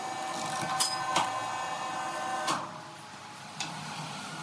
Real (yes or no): yes